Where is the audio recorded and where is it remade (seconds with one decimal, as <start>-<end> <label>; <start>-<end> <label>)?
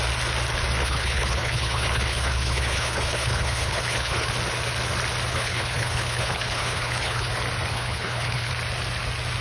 0.0-0.8 recorded; 0.8-4.3 remade; 4.3-5.3 recorded; 5.3-7.3 remade; 7.3-7.7 recorded; 7.7-8.5 remade; 8.5-9.4 recorded